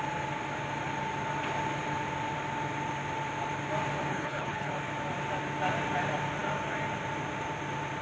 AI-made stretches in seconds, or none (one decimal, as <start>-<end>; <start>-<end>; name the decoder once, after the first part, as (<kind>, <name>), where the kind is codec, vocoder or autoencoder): 4.1-4.7 (codec, HILCodec)